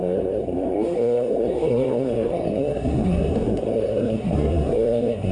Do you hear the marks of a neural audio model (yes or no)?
yes